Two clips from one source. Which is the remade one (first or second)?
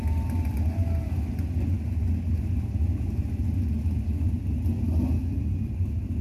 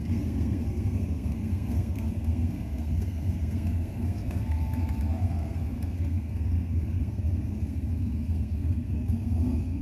second